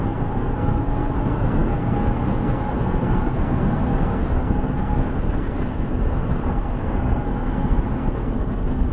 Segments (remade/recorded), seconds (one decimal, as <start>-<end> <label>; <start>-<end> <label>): 0.0-8.9 remade